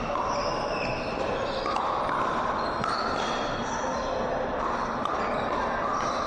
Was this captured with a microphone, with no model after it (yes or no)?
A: yes